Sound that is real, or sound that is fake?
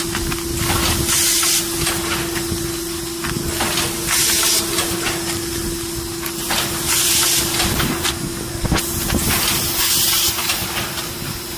real